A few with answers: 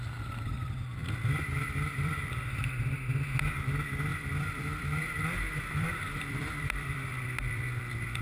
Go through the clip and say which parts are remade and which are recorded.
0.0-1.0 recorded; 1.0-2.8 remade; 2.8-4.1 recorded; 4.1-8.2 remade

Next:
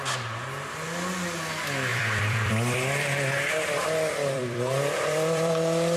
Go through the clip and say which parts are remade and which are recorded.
0.0-1.9 recorded; 1.9-5.5 remade; 5.5-6.0 recorded